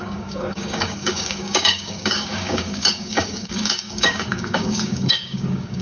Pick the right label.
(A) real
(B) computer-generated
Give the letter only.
B